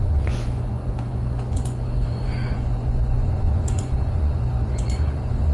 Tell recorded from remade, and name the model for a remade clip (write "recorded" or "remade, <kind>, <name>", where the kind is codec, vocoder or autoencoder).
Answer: remade, vocoder, Vocos